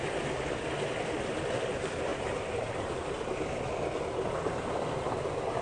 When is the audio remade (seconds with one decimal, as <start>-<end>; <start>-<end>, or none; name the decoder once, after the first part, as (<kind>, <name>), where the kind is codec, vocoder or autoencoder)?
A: none